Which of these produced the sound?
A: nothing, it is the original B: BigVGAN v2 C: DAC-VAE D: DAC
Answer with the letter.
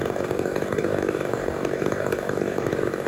D